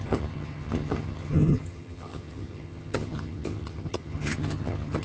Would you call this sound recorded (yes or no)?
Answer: no